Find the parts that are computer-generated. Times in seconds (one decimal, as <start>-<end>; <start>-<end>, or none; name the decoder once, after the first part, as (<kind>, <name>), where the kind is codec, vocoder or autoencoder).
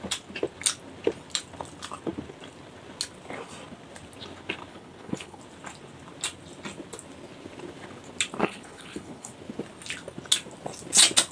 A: 4.7-5.4 (codec, HILCodec); 8.4-9.3